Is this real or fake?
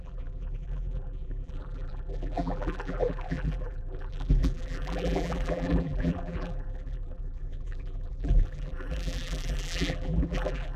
fake